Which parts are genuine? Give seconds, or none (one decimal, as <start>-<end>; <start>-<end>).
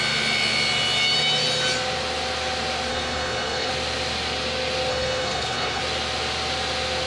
0.0-2.9; 3.7-4.9; 5.8-7.1